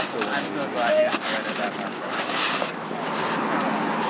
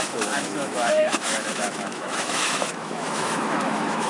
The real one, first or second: first